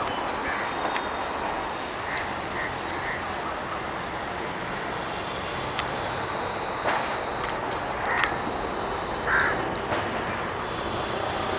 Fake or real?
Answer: real